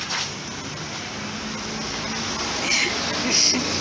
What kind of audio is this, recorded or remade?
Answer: recorded